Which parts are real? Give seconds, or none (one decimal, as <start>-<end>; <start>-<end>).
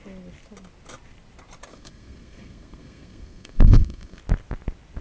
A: 0.0-1.7; 4.2-5.0